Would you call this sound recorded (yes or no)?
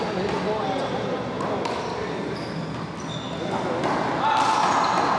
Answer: yes